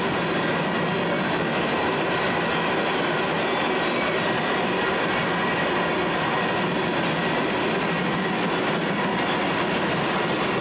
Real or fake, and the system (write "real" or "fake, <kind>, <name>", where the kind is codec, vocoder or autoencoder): real